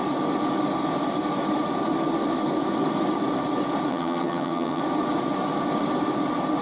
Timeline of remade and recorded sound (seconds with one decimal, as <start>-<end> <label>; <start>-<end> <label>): 0.0-3.9 recorded; 3.9-4.8 remade; 4.8-6.6 recorded